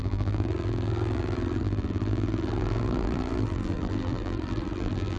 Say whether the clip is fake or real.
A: fake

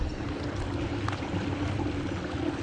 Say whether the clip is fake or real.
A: real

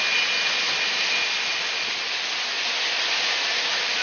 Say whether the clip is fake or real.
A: real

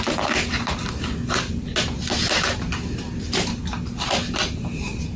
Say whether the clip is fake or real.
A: real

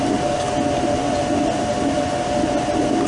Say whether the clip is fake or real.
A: real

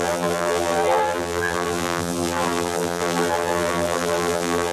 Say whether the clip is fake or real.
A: fake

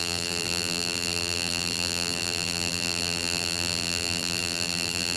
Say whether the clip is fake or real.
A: fake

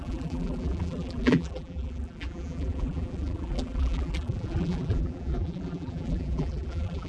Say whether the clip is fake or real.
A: fake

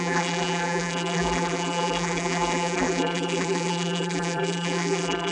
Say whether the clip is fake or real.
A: fake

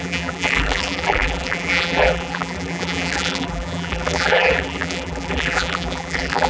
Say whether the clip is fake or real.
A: fake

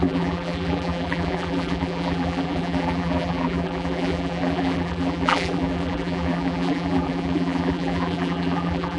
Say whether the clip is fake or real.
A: fake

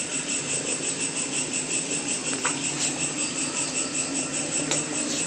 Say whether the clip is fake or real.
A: real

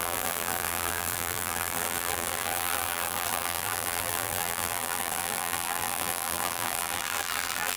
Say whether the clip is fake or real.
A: fake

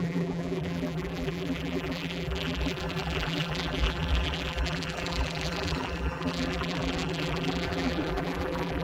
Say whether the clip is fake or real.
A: fake